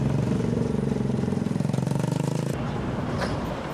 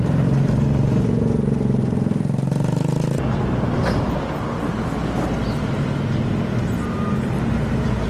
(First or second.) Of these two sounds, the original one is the second